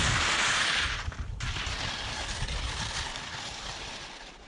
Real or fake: real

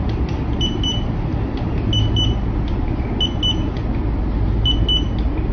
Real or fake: real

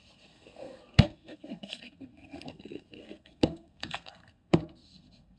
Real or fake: fake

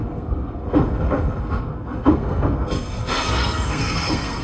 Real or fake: fake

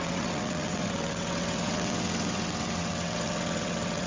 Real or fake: fake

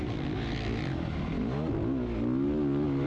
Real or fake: real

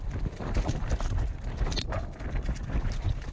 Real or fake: real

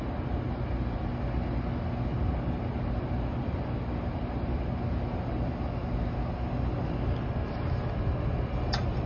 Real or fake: real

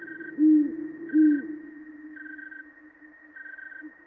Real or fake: real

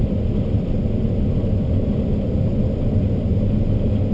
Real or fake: real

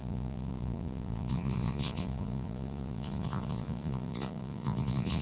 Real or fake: fake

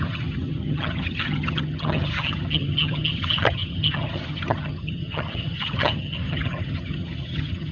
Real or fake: fake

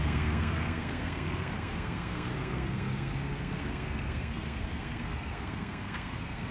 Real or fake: fake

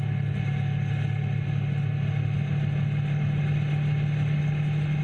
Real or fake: real